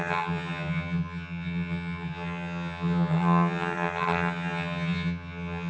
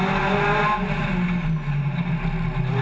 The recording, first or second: second